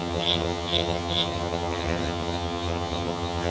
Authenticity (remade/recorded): remade